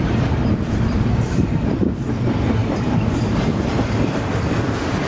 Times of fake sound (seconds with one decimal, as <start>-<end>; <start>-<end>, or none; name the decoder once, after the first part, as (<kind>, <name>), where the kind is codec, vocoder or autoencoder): 2.6-4.4 (vocoder, BigVGAN v2)